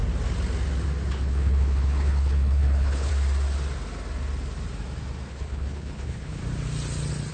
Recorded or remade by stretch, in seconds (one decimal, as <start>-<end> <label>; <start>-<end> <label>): 0.0-1.1 recorded; 1.1-3.1 remade; 3.1-5.3 recorded; 5.3-6.4 remade; 6.4-7.3 recorded